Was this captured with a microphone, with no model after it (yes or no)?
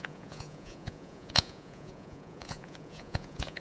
no